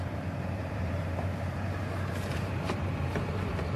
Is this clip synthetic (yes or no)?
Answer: yes